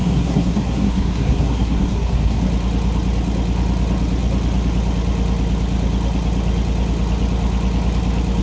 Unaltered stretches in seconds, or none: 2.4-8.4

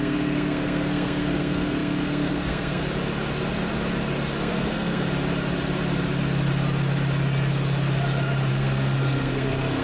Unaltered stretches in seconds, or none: 2.8-4.4; 5.1-8.5